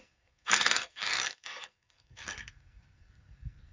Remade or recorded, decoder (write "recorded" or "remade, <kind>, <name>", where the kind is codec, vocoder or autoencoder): remade, codec, SNAC